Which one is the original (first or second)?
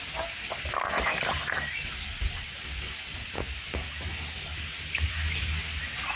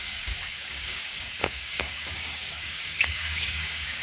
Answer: first